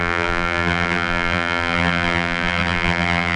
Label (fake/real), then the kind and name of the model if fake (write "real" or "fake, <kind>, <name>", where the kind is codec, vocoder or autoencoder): fake, vocoder, BigVGAN v2